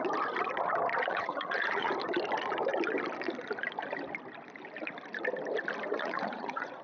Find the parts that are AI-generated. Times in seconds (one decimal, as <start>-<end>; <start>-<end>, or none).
1.1-1.9; 6.0-6.8